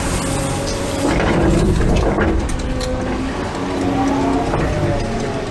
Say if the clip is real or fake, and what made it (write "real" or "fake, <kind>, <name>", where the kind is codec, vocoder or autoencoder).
real